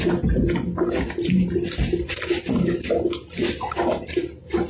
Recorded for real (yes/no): yes